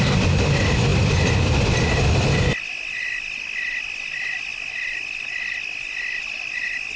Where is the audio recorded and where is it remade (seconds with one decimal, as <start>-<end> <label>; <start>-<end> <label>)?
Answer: 0.0-7.0 recorded